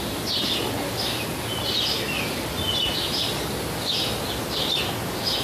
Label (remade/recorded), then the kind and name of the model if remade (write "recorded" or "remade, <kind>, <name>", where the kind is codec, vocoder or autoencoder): recorded